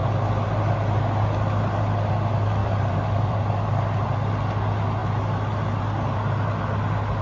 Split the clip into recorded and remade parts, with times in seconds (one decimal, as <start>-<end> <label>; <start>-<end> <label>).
0.0-2.6 recorded; 2.6-3.4 remade; 3.4-7.2 recorded